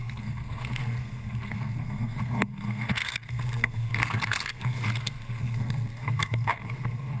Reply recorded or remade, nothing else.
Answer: remade